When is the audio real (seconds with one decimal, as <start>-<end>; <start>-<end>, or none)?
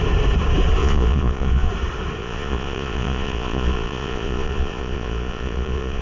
0.0-0.8; 1.7-2.2